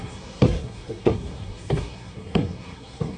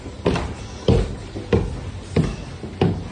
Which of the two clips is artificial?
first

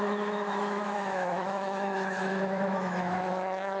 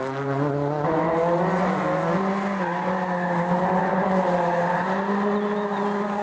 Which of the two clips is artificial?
first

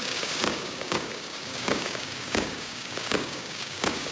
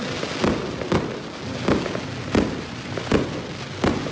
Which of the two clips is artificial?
first